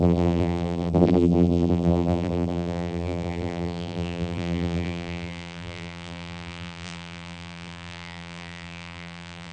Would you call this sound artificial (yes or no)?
yes